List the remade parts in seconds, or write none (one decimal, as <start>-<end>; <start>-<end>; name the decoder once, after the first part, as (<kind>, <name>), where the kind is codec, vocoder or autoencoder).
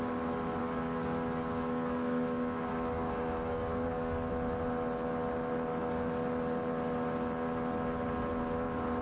0.6-4.3 (codec, DAC)